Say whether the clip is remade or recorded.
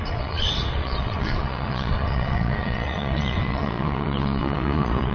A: remade